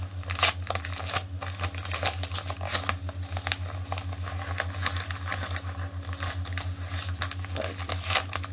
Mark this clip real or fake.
real